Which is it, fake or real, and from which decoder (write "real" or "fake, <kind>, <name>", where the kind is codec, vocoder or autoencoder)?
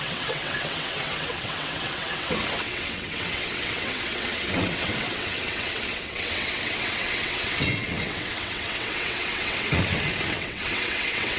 fake, vocoder, WaveNeXt